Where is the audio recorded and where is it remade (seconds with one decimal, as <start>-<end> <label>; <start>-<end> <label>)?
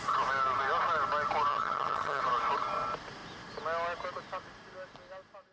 0.0-1.5 recorded; 1.5-2.2 remade; 2.2-5.5 recorded